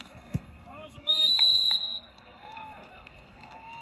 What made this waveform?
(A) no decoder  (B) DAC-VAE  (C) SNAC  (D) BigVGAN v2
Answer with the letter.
C